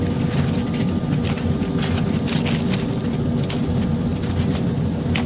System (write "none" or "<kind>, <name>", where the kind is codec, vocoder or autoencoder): none